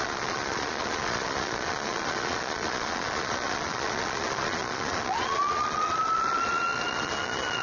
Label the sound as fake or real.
fake